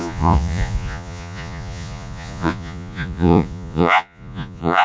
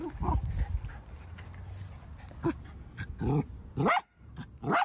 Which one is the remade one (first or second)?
first